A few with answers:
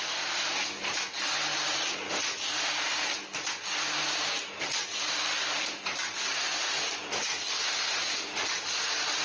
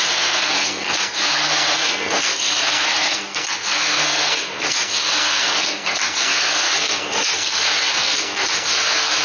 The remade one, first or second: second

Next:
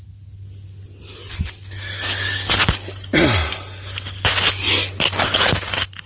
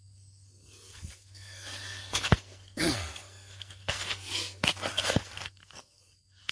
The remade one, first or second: second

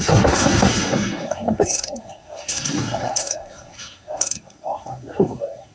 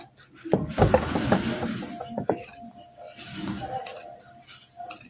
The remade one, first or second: first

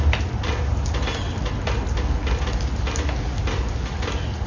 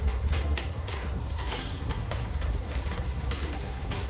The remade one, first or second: second